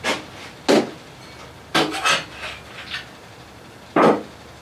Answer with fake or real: real